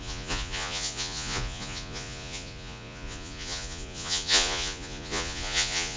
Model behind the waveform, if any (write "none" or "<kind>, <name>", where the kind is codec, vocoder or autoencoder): vocoder, Vocos